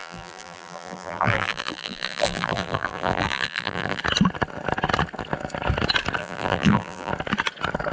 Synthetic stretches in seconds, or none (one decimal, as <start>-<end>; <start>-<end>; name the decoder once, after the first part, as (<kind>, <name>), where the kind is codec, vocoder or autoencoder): 0.0-4.0 (vocoder, BigVGAN v2); 6.2-7.1